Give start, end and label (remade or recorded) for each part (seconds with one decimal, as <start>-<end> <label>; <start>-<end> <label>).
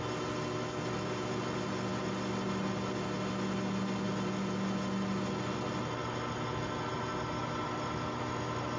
0.0-8.8 recorded